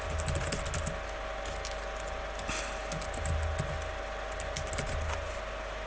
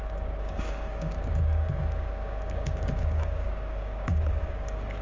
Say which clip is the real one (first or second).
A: first